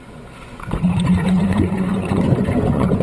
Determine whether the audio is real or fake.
fake